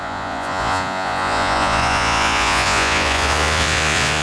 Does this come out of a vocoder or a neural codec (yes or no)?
yes